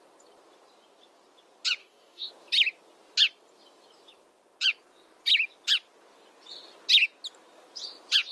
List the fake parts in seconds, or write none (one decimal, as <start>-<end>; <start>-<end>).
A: 1.8-2.3